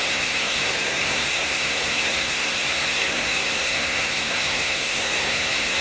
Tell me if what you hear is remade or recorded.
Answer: remade